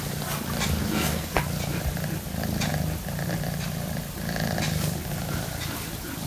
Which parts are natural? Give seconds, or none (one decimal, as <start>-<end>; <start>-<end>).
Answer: 0.0-0.8; 1.4-6.3